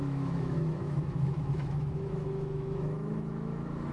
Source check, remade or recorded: remade